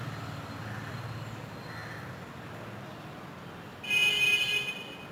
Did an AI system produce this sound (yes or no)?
no